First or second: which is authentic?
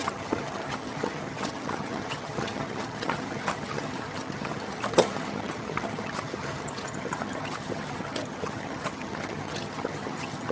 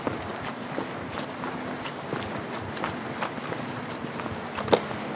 second